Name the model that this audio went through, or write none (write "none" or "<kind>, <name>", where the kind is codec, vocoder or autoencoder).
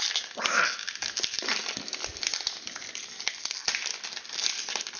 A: none